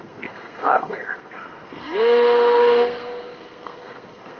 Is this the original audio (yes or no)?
no